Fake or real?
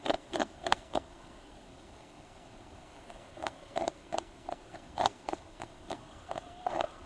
fake